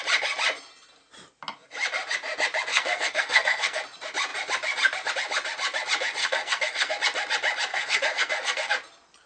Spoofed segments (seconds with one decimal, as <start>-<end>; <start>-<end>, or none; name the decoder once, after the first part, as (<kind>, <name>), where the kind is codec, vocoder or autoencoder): 2.7-3.8 (codec, SNAC); 6.2-6.9; 7.7-8.7